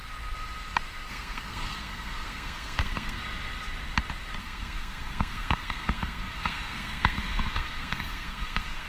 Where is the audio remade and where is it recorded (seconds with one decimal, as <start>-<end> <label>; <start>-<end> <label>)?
0.0-1.1 recorded; 1.1-3.2 remade; 3.2-4.4 recorded; 4.4-8.9 remade